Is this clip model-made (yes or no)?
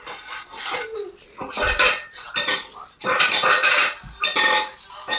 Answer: yes